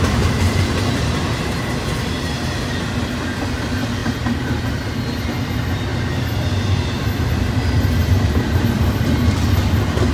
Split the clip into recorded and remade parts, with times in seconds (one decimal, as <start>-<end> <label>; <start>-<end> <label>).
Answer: 0.0-10.1 recorded